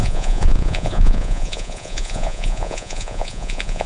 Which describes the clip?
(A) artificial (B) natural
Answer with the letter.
A